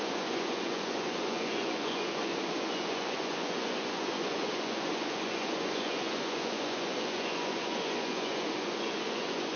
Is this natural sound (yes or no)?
no